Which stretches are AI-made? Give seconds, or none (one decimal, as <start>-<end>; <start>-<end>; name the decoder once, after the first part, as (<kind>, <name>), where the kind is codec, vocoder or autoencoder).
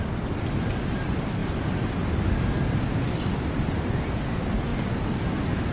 none